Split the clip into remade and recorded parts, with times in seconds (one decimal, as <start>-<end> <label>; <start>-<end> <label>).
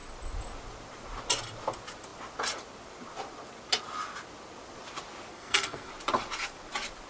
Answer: 0.0-5.3 recorded; 5.3-5.9 remade; 5.9-7.1 recorded